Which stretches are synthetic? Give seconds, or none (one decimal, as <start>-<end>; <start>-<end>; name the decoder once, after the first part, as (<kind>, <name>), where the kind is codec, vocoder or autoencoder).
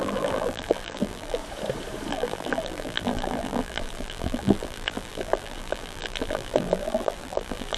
0.0-1.4 (vocoder, BigVGAN v2); 2.1-7.8